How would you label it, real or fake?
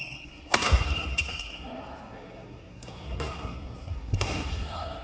fake